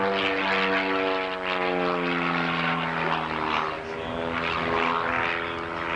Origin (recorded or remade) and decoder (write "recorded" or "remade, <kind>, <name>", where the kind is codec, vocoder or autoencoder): recorded